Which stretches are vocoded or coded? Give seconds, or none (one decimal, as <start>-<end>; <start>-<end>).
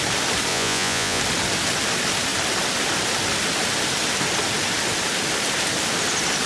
0.5-1.2